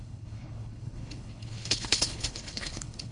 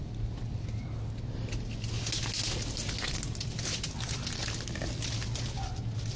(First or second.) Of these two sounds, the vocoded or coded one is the first